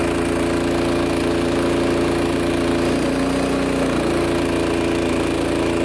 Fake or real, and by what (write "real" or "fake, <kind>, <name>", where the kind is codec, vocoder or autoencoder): real